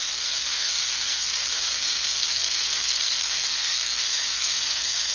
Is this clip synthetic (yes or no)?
yes